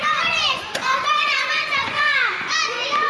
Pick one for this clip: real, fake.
fake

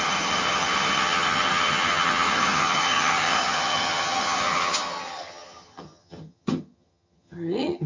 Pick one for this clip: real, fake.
fake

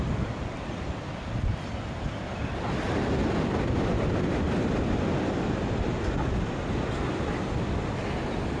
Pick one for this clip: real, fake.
real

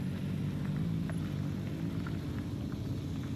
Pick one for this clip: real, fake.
real